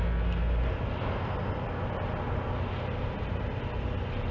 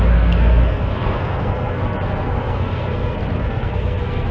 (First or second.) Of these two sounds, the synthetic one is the second